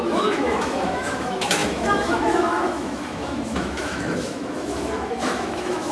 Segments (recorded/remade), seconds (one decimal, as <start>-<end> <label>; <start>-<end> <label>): 0.0-5.9 remade